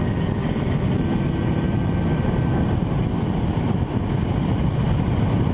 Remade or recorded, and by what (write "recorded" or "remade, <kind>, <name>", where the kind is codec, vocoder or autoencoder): recorded